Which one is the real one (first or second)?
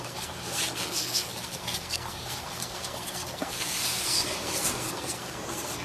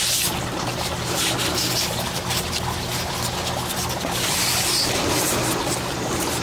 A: second